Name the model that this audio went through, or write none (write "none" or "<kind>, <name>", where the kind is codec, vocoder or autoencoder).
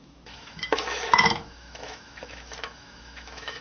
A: autoencoder, DAC-VAE